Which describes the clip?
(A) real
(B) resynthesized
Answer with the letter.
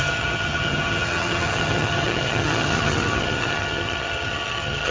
B